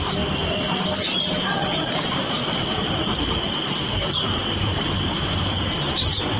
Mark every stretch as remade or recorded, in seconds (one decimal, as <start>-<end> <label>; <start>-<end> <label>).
0.0-6.4 remade